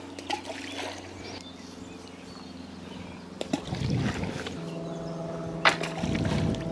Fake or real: real